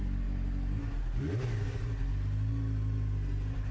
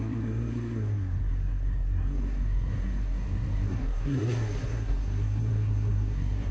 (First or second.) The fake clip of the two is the second